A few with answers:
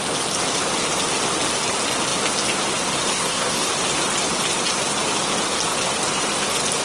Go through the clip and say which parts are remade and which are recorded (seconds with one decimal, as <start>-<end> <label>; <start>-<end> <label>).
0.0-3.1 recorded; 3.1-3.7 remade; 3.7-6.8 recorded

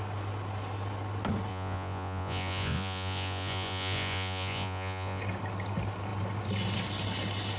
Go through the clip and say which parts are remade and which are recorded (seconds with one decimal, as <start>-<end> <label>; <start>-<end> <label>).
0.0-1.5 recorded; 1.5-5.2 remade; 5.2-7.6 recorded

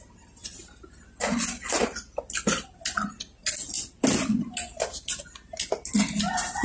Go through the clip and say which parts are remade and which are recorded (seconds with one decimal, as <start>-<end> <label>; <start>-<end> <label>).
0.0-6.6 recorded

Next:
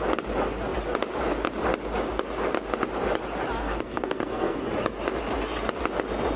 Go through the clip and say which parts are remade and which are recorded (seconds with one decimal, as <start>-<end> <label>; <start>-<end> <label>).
0.0-3.6 recorded; 3.6-4.7 remade; 4.7-6.4 recorded

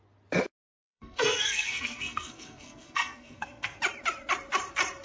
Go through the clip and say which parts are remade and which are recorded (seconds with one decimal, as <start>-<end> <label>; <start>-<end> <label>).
0.0-0.8 recorded; 0.8-3.8 remade; 3.8-5.0 recorded

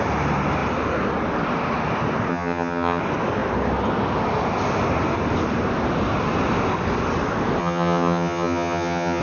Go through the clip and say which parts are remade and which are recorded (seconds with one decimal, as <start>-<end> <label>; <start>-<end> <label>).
0.0-2.3 recorded; 2.3-3.0 remade; 3.0-7.6 recorded; 7.6-9.2 remade